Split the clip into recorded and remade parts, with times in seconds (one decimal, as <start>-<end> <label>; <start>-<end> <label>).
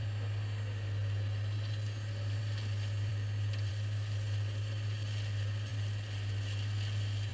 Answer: 0.0-7.3 recorded